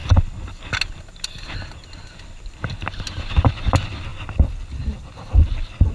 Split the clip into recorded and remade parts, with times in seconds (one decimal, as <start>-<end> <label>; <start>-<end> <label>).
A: 0.0-5.9 recorded